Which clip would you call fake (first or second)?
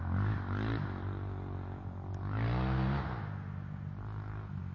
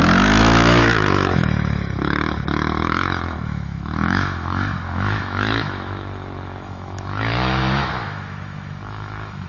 second